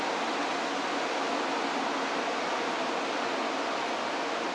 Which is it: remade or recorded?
recorded